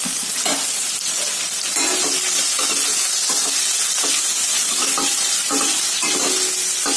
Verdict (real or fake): real